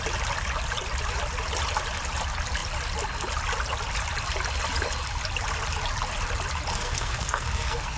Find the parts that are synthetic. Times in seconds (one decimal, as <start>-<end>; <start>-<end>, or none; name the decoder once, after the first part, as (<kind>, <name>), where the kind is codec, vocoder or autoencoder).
6.7-8.0 (codec, SNAC)